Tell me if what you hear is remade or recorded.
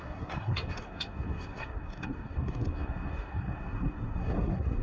remade